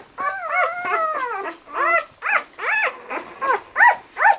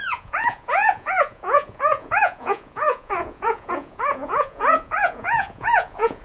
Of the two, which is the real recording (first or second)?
first